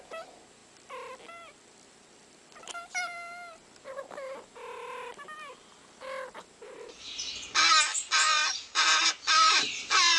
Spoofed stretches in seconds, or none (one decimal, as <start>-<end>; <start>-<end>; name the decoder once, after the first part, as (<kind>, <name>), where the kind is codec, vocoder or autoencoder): none